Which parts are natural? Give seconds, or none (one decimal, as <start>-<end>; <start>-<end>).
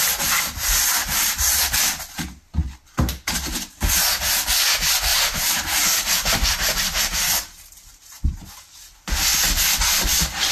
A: 0.0-1.0; 1.8-5.1; 8.4-10.5